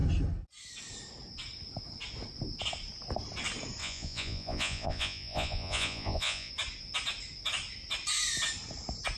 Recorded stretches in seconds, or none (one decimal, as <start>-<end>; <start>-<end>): 0.0-3.8; 6.5-9.2